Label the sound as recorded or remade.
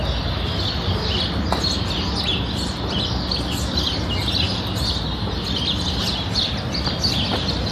recorded